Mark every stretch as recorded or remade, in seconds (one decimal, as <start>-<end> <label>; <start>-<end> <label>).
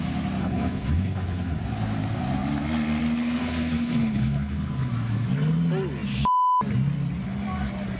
0.0-0.4 recorded; 0.4-1.6 remade; 1.6-3.4 recorded; 3.4-4.9 remade; 4.9-8.0 recorded